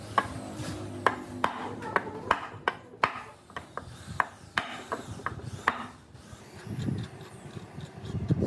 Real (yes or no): yes